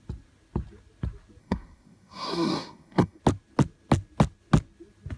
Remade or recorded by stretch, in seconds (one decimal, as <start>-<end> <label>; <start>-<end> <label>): 0.0-1.4 recorded; 1.4-3.2 remade; 3.2-5.2 recorded